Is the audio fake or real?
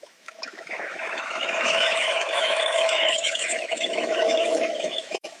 fake